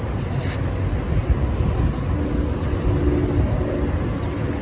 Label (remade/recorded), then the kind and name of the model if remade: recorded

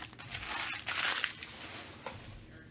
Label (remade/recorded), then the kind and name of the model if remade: recorded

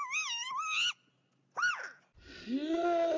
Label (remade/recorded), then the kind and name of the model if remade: recorded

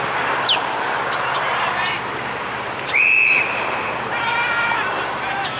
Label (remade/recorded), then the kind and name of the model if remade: remade, vocoder, BigVGAN v2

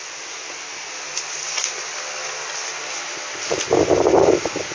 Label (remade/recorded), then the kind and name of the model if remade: recorded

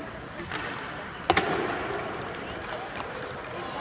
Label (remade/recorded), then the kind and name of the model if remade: recorded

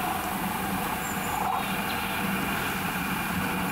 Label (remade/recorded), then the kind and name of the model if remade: recorded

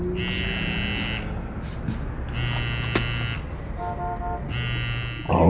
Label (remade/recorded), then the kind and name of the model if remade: recorded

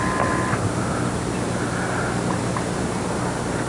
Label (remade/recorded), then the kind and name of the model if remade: recorded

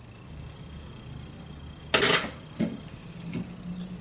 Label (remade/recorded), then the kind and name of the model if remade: recorded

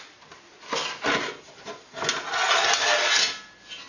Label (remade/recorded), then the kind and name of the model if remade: recorded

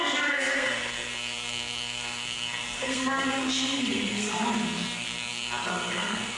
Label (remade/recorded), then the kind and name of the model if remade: remade, codec, SNAC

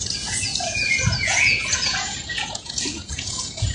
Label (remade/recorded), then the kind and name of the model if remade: remade, vocoder, Vocos